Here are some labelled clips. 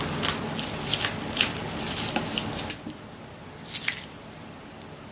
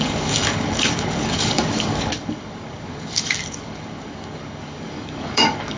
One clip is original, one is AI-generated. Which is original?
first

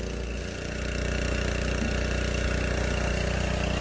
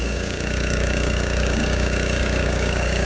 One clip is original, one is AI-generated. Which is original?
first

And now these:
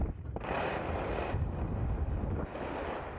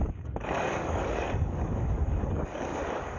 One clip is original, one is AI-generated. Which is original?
first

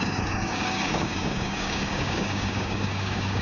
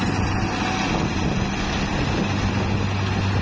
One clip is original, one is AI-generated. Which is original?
second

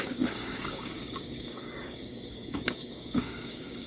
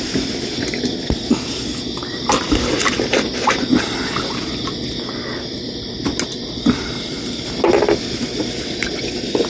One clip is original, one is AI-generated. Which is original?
second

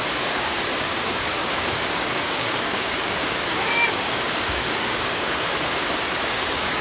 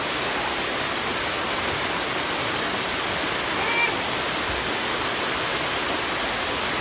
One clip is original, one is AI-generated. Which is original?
second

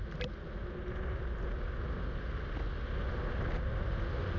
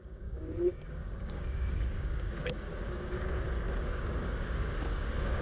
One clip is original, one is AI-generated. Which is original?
first